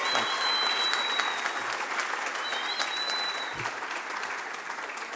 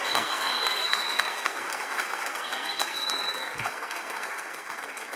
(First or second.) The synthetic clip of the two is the second